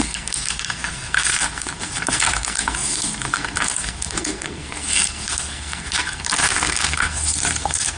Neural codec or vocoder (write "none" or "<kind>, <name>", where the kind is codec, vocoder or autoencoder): codec, SNAC